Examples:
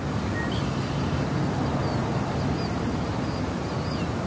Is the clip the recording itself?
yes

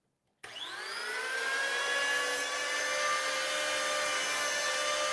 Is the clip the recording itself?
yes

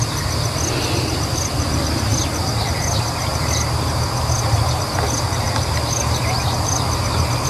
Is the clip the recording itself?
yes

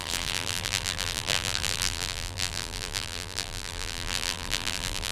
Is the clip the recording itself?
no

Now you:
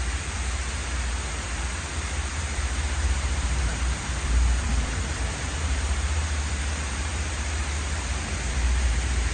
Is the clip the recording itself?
no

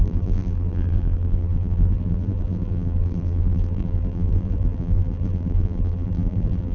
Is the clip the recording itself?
no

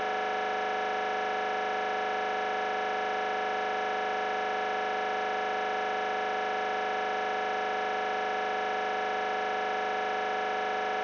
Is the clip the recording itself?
yes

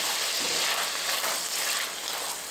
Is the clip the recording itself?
yes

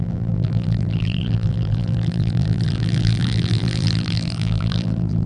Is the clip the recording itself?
no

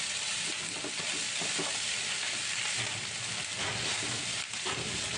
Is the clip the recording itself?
yes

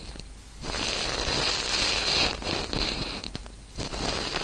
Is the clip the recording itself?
yes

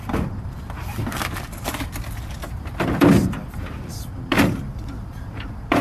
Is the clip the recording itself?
no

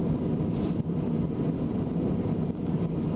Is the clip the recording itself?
yes